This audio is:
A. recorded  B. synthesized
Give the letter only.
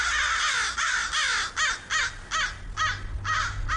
A